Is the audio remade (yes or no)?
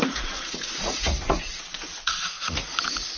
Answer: yes